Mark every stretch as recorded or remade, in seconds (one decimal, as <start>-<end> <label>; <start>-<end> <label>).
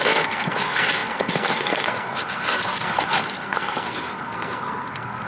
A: 0.0-5.3 remade